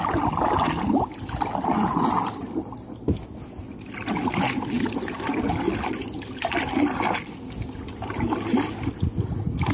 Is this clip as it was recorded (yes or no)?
yes